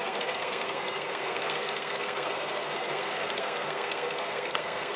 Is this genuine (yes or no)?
no